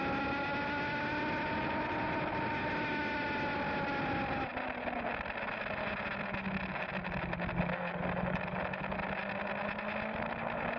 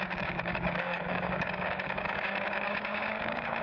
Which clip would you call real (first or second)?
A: first